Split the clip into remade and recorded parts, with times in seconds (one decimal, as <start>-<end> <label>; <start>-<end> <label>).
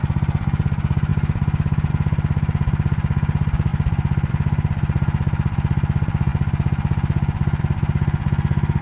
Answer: 0.0-8.8 recorded